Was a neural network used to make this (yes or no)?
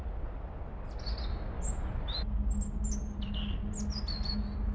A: no